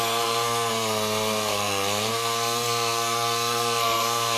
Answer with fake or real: fake